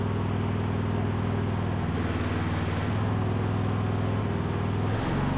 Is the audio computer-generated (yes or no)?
no